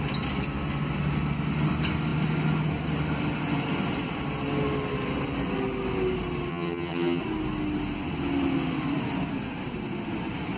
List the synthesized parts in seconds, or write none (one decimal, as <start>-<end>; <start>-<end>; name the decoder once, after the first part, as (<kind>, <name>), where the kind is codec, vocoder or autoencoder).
6.5-7.2 (vocoder, HiFi-GAN)